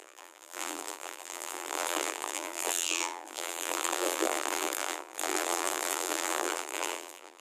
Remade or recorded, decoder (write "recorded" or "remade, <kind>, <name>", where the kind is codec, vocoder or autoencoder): remade, vocoder, BigVGAN v2